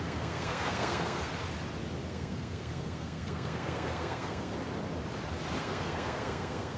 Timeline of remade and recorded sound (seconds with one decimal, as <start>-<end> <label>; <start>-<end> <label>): 0.0-1.3 remade; 1.3-2.1 recorded; 2.1-4.5 remade; 4.5-5.6 recorded; 5.6-6.8 remade